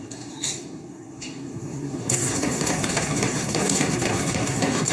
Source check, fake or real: fake